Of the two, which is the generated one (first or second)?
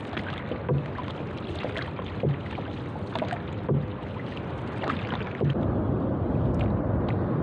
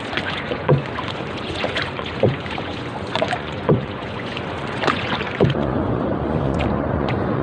second